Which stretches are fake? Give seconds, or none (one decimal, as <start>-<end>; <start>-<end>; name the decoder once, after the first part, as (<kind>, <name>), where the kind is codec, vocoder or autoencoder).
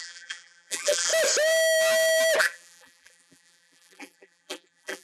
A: 0.0-1.1 (vocoder, BigVGAN v2); 2.4-5.0